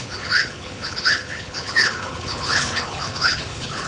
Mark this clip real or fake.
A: fake